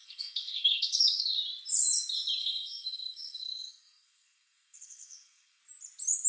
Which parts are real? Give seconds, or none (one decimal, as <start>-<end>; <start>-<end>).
1.2-2.4; 5.6-6.3